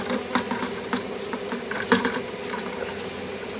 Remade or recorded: recorded